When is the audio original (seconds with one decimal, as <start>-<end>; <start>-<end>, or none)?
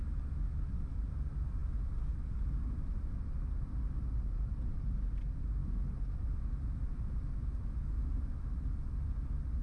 0.0-9.6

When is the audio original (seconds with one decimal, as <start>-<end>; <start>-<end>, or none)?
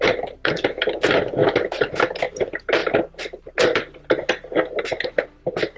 0.0-5.8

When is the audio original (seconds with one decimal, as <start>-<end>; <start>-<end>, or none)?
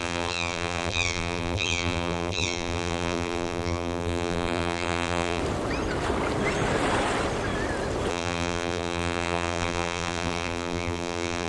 5.4-8.1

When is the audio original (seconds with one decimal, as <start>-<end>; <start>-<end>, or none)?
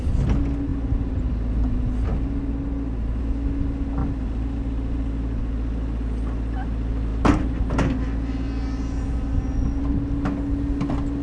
0.0-11.2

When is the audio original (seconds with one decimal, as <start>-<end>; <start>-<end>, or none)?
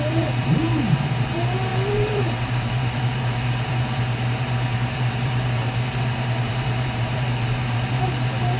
none